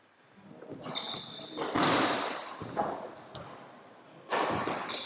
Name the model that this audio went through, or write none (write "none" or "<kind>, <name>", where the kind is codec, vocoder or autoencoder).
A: none